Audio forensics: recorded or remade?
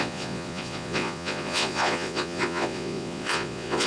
remade